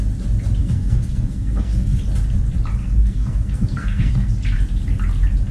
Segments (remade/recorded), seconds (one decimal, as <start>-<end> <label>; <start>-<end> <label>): 0.0-0.6 recorded; 0.6-2.0 remade; 2.0-2.8 recorded; 2.8-4.3 remade; 4.3-5.5 recorded